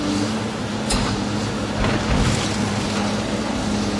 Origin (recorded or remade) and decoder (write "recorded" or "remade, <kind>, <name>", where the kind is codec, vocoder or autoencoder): recorded